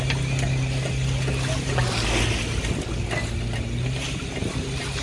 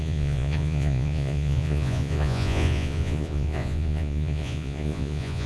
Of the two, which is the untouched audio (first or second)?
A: first